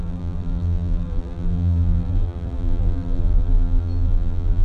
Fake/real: fake